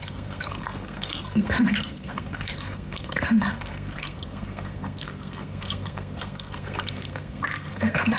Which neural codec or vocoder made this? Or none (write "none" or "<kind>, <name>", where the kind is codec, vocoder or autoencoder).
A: codec, SNAC